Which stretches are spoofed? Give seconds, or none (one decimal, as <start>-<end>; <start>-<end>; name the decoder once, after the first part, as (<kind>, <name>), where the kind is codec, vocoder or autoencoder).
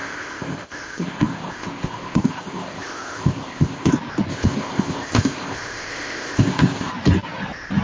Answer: 0.0-3.9 (codec, ZipCodec); 4.3-6.9